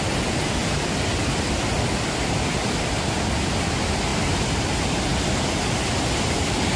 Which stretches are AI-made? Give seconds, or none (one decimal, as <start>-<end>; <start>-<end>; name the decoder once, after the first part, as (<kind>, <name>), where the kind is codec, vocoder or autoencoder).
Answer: 0.6-3.4 (vocoder, BigVGAN v2); 4.1-4.6